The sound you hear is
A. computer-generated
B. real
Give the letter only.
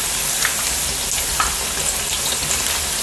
B